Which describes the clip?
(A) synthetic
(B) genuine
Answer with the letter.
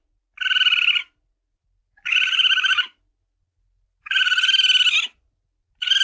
B